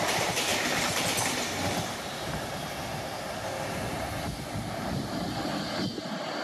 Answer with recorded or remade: recorded